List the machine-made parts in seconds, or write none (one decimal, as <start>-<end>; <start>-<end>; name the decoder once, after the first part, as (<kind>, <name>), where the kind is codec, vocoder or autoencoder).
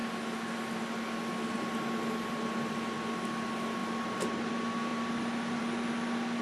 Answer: 3.8-4.5 (vocoder, BigVGAN v2); 4.9-5.6